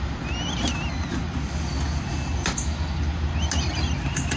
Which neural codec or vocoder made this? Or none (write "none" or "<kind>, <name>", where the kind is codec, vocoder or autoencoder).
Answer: none